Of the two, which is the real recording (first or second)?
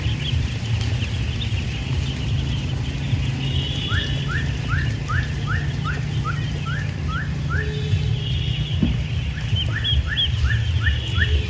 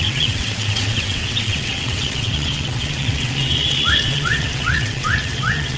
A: first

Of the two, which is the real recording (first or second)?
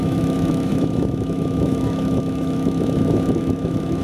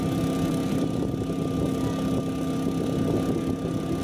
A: second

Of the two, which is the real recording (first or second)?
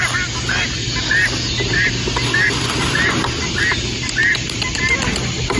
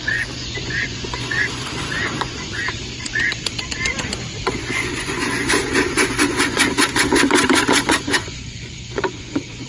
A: first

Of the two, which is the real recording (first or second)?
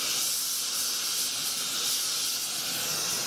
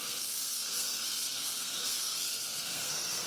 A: first